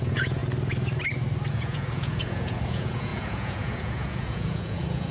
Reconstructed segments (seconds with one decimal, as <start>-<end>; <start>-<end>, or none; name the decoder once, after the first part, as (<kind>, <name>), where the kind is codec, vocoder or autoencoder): 0.0-0.4 (vocoder, Vocos); 1.5-5.1